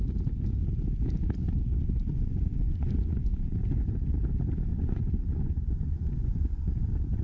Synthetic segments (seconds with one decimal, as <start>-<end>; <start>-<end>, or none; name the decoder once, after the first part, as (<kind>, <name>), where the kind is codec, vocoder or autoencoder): 2.1-3.6 (vocoder, Vocos); 4.7-6.7